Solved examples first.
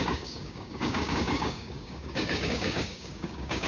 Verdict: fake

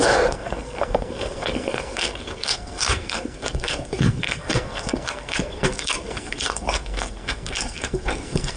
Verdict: fake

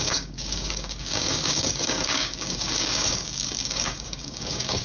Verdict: fake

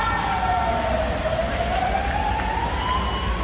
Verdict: real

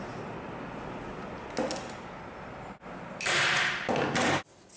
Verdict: real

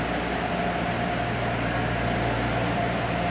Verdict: real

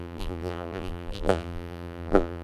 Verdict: fake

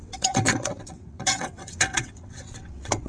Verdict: fake